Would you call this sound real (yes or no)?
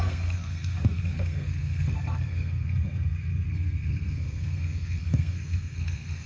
no